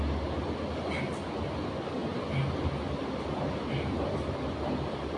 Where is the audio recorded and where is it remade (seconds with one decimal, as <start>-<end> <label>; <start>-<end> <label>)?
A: 0.0-5.2 recorded